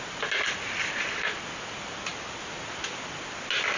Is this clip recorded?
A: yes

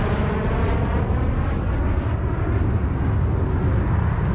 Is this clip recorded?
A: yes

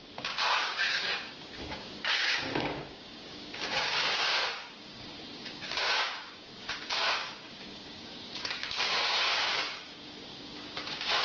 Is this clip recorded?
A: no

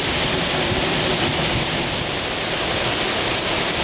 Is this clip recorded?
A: yes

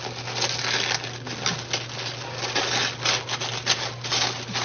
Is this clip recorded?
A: yes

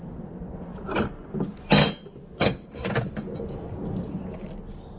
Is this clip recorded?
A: yes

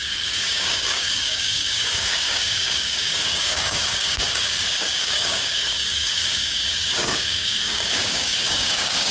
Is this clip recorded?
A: no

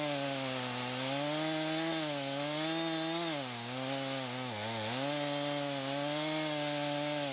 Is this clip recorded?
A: yes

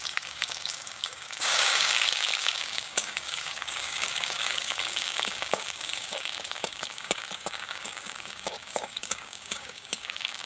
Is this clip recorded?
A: no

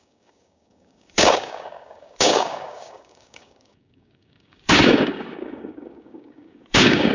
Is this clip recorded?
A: no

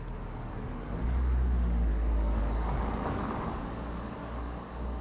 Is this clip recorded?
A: no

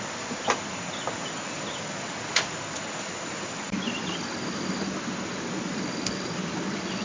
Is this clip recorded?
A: yes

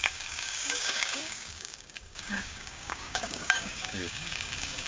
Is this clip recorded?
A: no